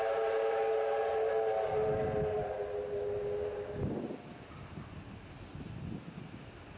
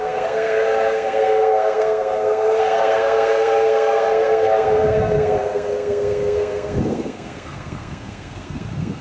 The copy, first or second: second